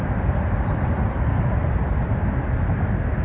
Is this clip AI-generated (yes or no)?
no